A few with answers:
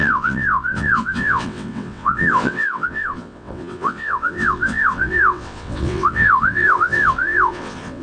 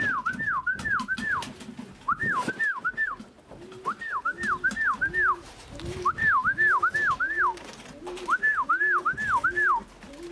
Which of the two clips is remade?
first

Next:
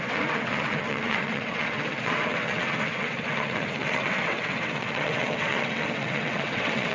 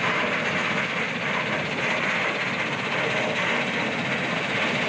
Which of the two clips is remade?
first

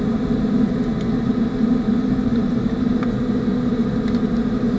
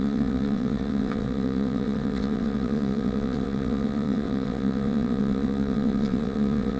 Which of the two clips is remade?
second